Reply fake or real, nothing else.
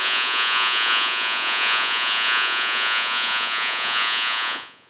fake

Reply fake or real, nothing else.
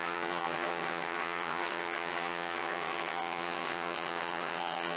fake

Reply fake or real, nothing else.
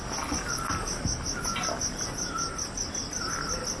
real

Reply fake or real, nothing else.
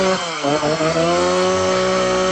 fake